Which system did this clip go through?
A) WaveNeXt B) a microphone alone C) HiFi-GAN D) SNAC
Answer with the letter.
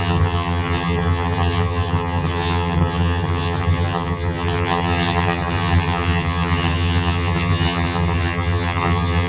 C